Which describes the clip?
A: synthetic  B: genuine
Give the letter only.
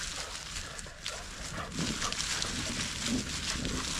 B